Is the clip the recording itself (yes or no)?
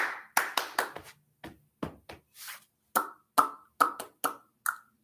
yes